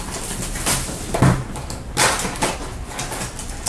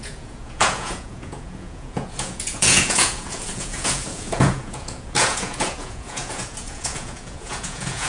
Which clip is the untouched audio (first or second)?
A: first